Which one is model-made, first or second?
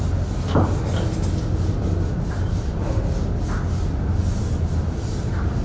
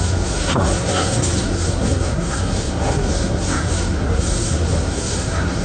second